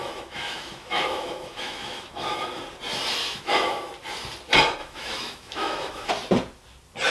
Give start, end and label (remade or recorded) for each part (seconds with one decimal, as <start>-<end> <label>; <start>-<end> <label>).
0.0-2.6 remade; 2.6-3.2 recorded; 3.2-3.9 remade; 3.9-4.8 recorded; 4.8-6.1 remade; 6.1-7.1 recorded